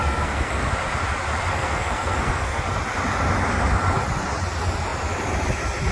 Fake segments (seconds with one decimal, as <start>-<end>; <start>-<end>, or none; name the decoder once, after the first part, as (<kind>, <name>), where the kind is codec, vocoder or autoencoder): 0.0-0.7 (codec, SNAC); 1.5-2.6